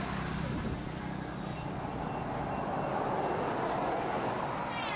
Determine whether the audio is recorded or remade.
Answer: recorded